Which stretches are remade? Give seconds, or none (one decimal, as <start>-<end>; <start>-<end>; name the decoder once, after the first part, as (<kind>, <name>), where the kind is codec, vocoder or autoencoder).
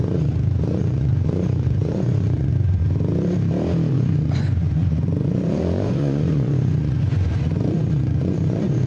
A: 0.0-2.8 (vocoder, Vocos); 3.9-8.9